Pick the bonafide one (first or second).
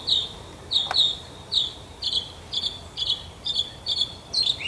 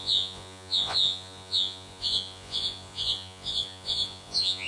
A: first